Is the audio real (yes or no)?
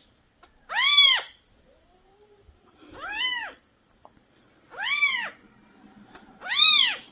no